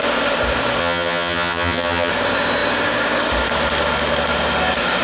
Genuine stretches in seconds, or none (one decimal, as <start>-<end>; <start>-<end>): 0.0-0.8; 2.1-5.0